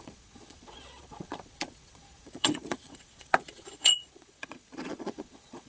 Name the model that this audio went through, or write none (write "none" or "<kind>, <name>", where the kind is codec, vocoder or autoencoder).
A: vocoder, Vocos